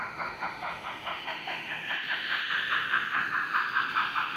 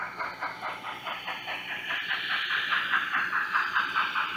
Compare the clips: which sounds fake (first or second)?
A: first